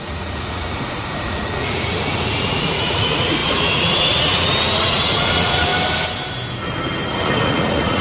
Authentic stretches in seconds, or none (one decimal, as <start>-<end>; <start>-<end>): 5.7-7.1